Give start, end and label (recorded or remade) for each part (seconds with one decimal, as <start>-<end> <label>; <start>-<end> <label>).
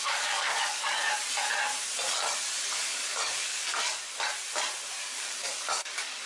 0.0-1.1 remade; 1.1-2.9 recorded; 2.9-4.0 remade; 4.0-5.0 recorded; 5.0-6.3 remade